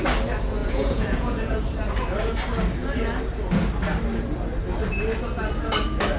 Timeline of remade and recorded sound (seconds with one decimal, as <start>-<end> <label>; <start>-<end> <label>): 0.0-0.6 recorded; 0.6-1.6 remade; 1.6-6.2 recorded